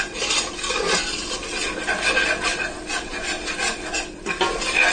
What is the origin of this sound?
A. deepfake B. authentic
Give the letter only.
B